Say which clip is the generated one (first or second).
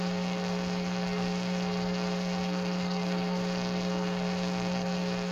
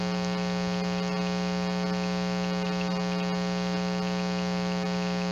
first